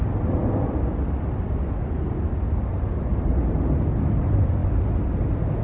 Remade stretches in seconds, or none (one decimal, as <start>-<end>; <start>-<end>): none